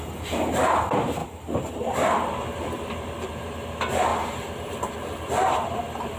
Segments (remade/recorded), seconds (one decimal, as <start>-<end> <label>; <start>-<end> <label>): 0.0-1.2 recorded; 1.2-1.7 remade; 1.7-4.1 recorded; 4.1-5.8 remade; 5.8-6.2 recorded